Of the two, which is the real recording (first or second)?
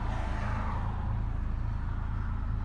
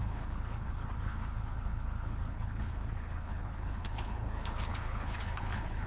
first